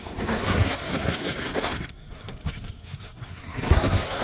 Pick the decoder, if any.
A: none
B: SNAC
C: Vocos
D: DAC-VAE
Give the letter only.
B